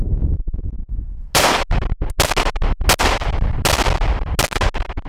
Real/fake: real